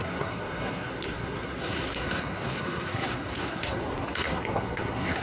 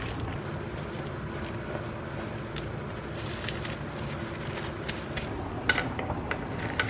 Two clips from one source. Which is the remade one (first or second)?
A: first